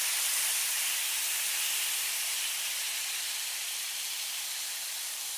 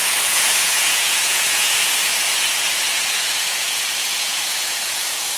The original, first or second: first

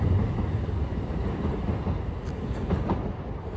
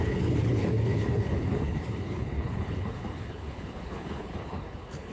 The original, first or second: first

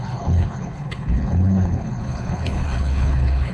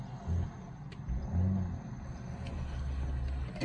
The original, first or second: second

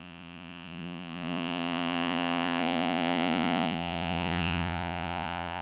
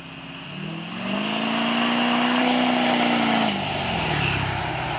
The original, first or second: second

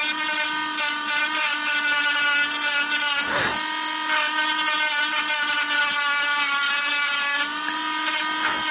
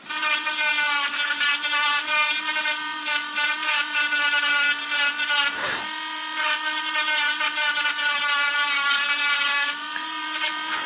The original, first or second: first